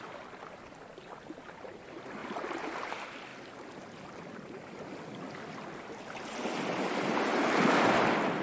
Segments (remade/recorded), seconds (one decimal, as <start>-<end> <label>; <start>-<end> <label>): 0.0-3.3 remade; 3.3-5.8 recorded; 5.8-8.4 remade